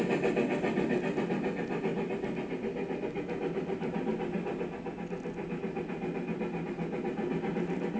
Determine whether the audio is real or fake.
real